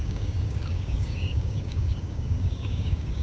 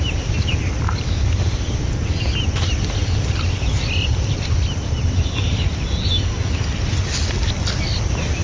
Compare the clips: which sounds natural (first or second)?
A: second